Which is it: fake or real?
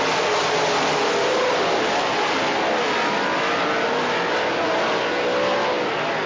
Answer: real